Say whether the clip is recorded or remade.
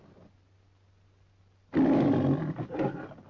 recorded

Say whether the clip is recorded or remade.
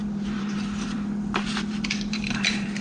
remade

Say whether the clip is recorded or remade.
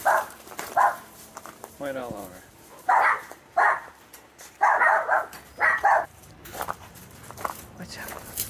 remade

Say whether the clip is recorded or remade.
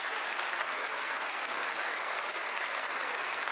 remade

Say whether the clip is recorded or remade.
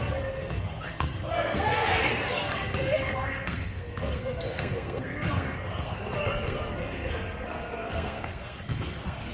remade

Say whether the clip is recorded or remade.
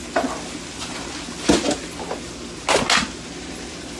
recorded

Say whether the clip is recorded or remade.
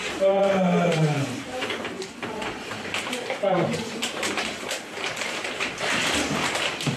remade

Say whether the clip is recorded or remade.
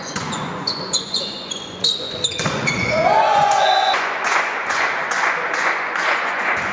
remade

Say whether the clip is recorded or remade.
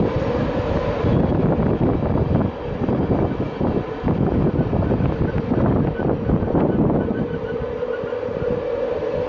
recorded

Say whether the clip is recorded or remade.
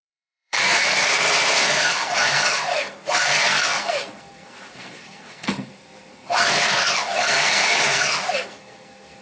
remade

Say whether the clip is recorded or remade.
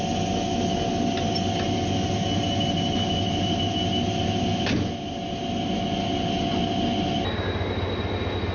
recorded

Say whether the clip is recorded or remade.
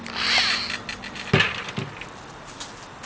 recorded